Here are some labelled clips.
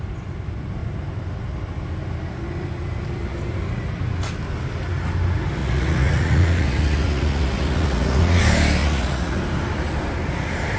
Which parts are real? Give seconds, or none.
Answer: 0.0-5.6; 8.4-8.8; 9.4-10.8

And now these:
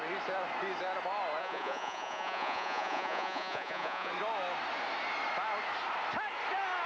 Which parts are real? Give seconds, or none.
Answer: 0.0-1.4; 4.1-6.9

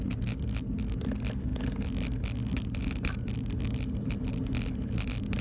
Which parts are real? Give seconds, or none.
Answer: 0.0-5.4

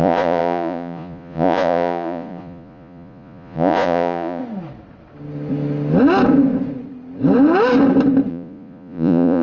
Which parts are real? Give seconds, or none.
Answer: 4.4-8.3

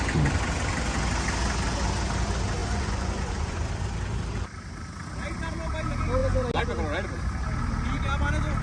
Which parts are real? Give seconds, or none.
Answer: 0.0-2.6; 3.7-8.6

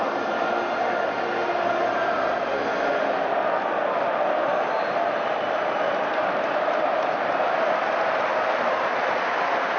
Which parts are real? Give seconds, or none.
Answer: 0.0-9.8